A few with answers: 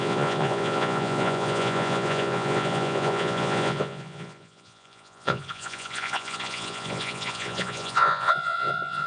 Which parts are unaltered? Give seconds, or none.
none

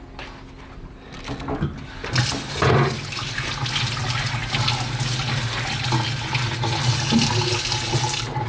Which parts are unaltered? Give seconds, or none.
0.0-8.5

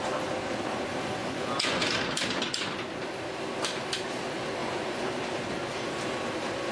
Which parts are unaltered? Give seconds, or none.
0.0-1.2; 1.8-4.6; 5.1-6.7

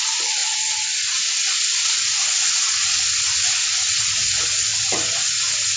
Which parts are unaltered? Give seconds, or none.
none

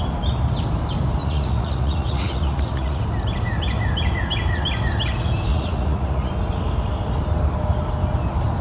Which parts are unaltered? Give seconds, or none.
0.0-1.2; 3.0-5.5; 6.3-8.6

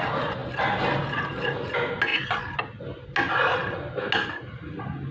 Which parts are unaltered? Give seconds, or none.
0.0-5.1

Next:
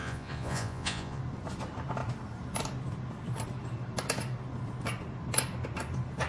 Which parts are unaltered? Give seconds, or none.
1.2-6.3

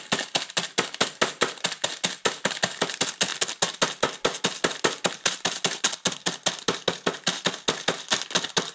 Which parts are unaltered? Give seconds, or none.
0.0-8.7